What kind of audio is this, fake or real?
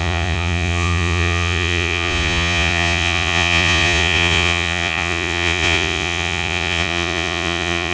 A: fake